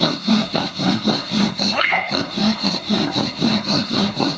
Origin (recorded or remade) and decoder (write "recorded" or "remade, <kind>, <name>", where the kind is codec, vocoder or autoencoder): remade, codec, SNAC